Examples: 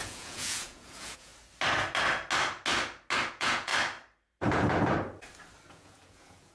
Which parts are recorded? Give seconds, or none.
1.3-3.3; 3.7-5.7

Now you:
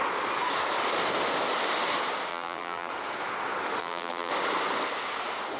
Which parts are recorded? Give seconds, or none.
0.0-2.3; 2.9-3.8; 4.3-5.6

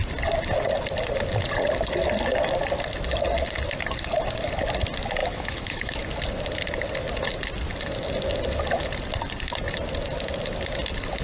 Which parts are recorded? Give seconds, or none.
0.0-5.2; 6.0-11.2

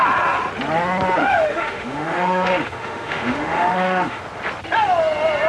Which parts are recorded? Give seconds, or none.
0.0-1.2; 4.2-5.5

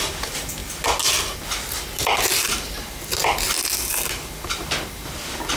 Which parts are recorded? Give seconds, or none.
0.0-5.6